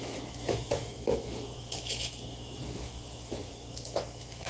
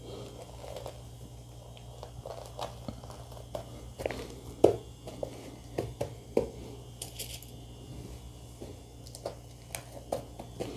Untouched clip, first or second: second